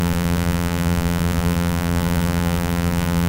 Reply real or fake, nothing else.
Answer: fake